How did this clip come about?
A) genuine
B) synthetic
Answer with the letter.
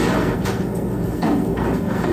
B